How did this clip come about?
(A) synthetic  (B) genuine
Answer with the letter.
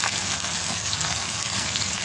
A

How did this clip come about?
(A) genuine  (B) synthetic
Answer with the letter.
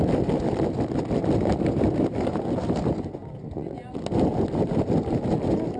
A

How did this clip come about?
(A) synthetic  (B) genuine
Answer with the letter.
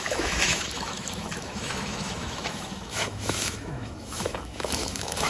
A